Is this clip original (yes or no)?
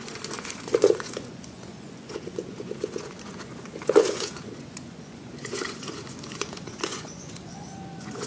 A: no